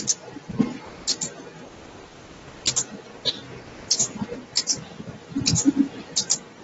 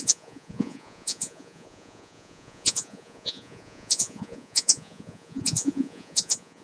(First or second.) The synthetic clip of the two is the second